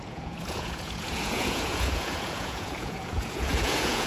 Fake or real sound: fake